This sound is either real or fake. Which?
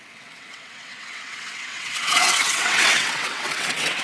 fake